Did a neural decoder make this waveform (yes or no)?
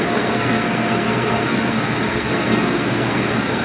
yes